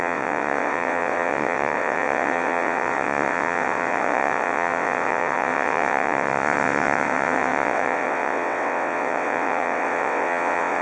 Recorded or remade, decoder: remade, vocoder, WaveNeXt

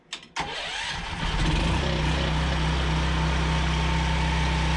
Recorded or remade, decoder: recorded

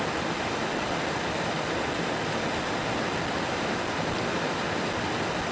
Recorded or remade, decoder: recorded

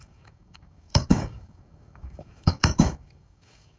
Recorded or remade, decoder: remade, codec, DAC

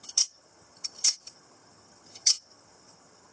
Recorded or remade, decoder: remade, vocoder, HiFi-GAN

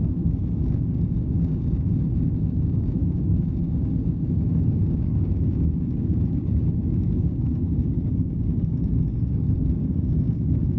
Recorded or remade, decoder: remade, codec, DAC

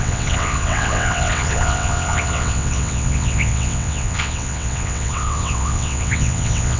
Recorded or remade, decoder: remade, vocoder, WaveNeXt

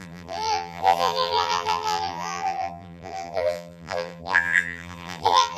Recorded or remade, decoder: remade, vocoder, BigVGAN v2